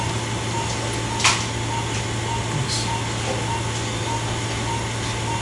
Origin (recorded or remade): recorded